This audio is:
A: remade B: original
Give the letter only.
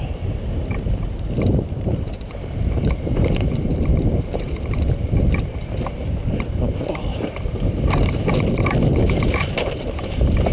A